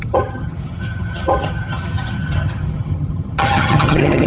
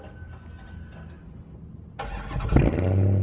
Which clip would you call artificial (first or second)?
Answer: first